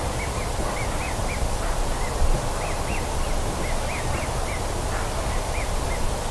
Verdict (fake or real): real